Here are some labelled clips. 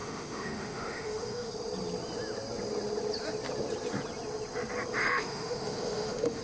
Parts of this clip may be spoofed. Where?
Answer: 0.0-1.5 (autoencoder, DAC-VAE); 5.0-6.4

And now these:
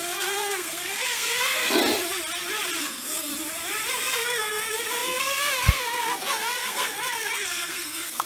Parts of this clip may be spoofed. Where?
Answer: 0.0-1.8 (codec, SNAC); 2.8-3.3; 3.9-8.3

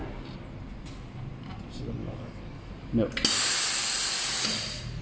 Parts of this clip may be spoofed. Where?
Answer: 2.0-2.7 (codec, DAC)

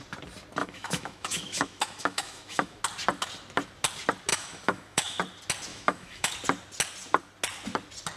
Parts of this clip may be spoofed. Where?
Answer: 0.6-2.8 (autoencoder, DAC-VAE); 4.3-5.2; 5.7-6.3

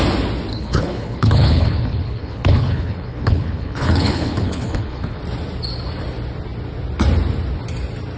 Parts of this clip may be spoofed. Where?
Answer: 0.5-5.2 (codec, HILCodec)

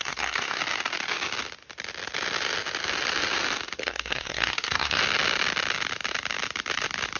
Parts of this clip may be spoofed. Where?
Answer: 0.0-0.6 (codec, SNAC); 3.8-5.0

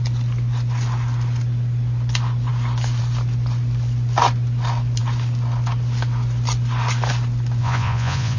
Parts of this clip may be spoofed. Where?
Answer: 7.6-8.4 (vocoder, Vocos)

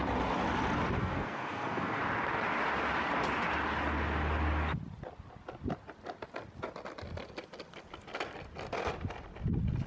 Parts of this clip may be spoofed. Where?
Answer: 1.0-2.0 (codec, SNAC)